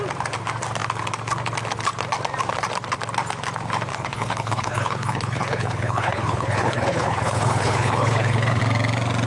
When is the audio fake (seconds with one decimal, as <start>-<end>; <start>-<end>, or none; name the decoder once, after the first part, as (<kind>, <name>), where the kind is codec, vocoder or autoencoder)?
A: 3.9-8.6 (codec, HILCodec)